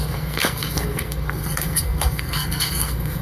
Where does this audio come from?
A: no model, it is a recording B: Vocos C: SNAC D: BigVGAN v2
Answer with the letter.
C